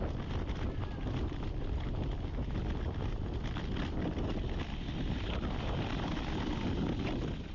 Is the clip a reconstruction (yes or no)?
no